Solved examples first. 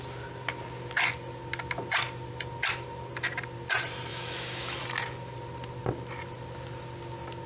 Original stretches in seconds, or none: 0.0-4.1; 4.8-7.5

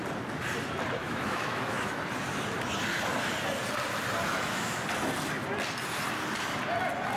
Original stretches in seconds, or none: 0.0-1.0; 2.0-4.3; 4.8-7.2

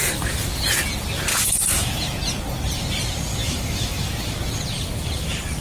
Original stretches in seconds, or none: 0.0-1.3; 2.2-3.3; 4.1-5.6

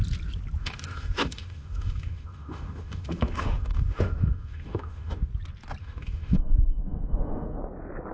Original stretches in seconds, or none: 0.0-0.6; 5.3-5.8; 7.6-8.1

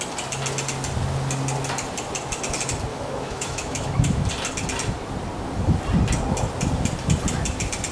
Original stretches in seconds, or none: 0.0-2.9; 4.3-7.9

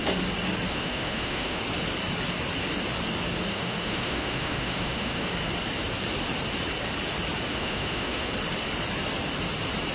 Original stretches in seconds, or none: 0.0-0.7; 1.6-3.5; 5.3-7.5; 8.3-9.9

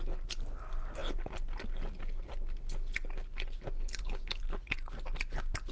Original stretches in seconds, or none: 0.0-5.7